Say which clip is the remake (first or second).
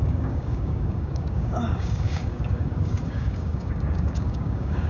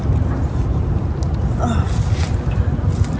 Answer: first